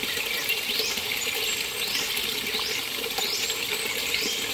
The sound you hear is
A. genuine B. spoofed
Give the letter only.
A